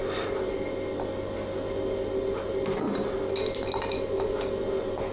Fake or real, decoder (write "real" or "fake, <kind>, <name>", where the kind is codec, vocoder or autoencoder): real